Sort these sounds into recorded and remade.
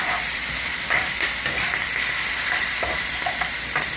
remade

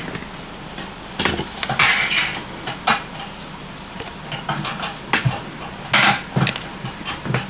recorded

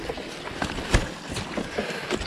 recorded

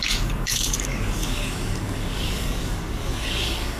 remade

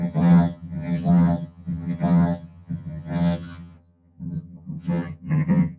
remade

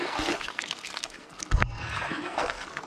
remade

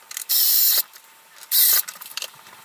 recorded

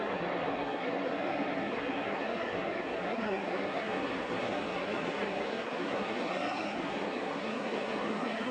remade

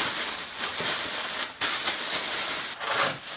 recorded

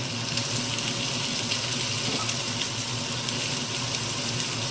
recorded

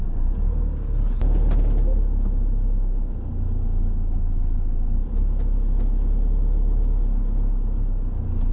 recorded